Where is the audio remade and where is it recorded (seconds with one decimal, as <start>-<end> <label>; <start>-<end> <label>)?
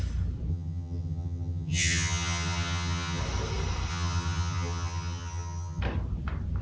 0.0-0.5 recorded; 0.5-3.2 remade; 3.2-3.9 recorded; 3.9-5.8 remade; 5.8-6.6 recorded